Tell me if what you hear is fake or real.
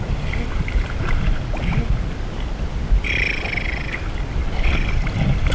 real